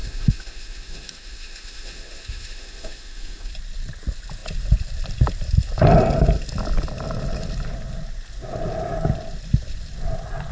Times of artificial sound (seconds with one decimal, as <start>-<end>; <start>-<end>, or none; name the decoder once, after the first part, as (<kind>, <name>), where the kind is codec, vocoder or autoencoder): 0.0-3.5 (autoencoder, DAC-VAE)